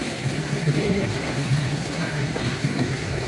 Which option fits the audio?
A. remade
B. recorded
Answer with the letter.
A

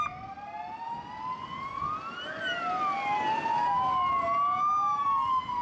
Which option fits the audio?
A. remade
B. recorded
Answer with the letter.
B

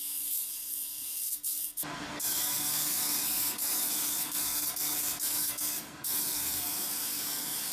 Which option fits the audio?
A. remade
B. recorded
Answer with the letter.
A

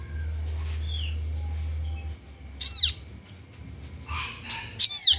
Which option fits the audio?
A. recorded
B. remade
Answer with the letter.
A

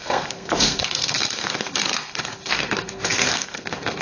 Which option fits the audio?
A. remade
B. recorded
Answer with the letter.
A